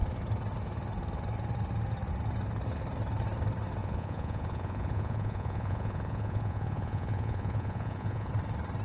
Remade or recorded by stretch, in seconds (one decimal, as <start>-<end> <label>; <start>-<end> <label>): 0.0-3.8 recorded; 3.8-8.3 remade; 8.3-8.8 recorded